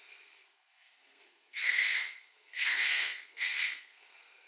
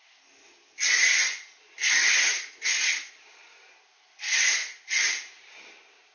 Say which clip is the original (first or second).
second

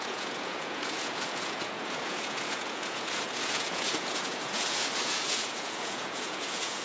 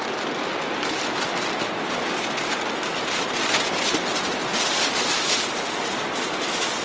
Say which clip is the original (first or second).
second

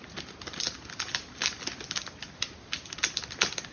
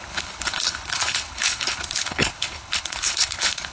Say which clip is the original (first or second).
first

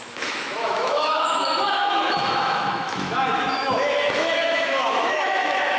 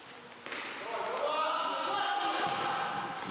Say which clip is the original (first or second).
second